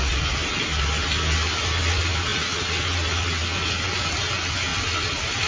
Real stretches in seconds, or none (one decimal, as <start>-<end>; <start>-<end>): 0.0-5.5